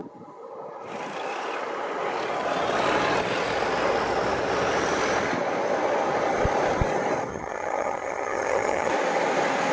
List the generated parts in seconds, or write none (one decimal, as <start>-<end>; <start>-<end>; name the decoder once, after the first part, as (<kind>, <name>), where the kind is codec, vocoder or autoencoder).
7.3-8.9 (vocoder, HiFi-GAN)